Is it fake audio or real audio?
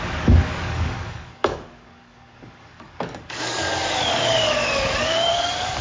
fake